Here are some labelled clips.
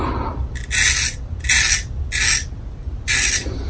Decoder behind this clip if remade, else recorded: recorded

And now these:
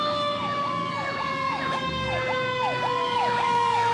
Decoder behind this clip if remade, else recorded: remade, codec, DAC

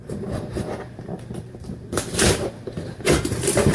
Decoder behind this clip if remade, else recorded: remade, vocoder, BigVGAN v2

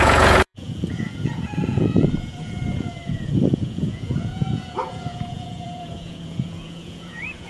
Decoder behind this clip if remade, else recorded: remade, vocoder, Vocos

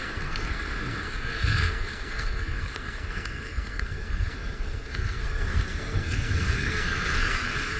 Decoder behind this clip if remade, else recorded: remade, codec, SNAC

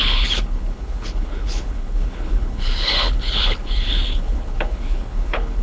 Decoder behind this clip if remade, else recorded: remade, codec, HILCodec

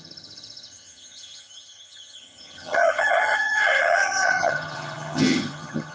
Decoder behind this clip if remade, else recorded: remade, vocoder, HiFi-GAN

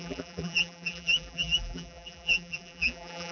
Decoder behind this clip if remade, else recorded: remade, vocoder, BigVGAN v2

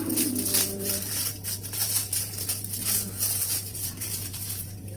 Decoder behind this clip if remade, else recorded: remade, vocoder, BigVGAN v2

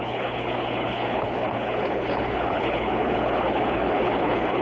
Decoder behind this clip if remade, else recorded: remade, codec, HILCodec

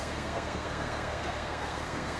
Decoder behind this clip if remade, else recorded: remade, codec, SNAC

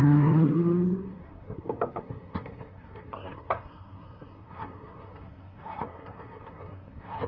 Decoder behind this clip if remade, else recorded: remade, codec, SNAC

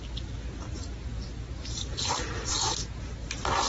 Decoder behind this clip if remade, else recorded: recorded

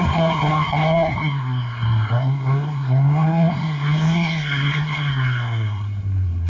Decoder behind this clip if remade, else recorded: remade, codec, SNAC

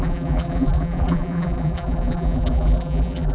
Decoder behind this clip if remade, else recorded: remade, vocoder, BigVGAN v2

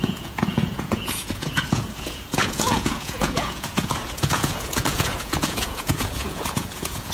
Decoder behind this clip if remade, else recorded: remade, vocoder, Vocos